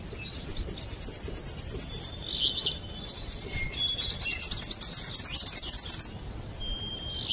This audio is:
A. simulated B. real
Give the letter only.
B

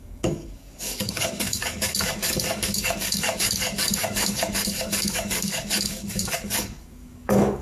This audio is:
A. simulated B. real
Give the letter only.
A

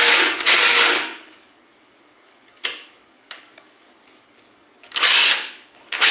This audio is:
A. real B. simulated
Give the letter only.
B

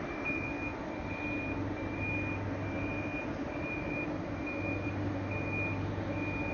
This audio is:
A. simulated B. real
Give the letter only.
B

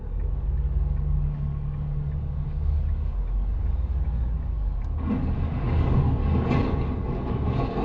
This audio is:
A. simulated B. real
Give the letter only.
A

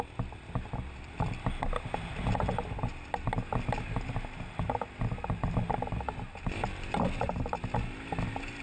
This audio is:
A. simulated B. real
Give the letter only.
B